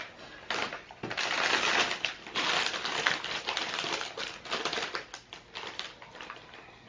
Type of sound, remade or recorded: recorded